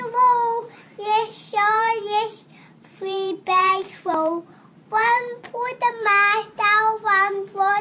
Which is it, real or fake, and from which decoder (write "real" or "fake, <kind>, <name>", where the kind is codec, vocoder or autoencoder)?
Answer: fake, vocoder, BigVGAN v2